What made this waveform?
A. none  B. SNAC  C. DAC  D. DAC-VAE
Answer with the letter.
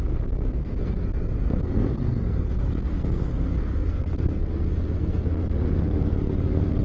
B